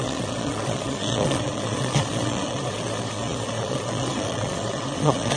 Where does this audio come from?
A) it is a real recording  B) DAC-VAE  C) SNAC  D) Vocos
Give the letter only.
D